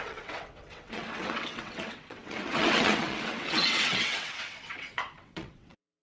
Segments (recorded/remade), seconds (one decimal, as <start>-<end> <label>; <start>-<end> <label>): 0.0-6.0 remade